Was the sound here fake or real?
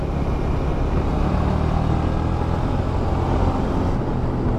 real